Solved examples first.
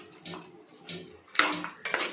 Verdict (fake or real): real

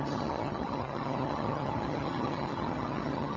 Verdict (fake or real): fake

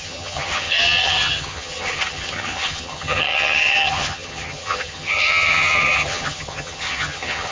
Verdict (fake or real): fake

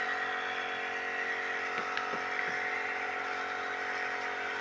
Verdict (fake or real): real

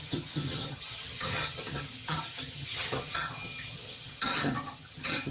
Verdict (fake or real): fake